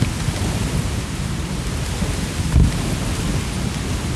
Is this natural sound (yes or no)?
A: yes